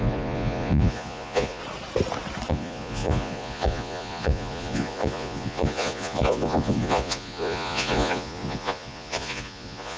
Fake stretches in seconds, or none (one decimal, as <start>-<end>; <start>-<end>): 0.0-1.6; 2.5-10.0